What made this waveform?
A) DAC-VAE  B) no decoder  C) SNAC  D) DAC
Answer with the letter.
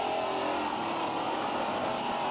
B